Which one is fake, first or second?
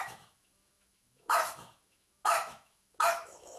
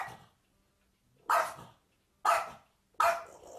first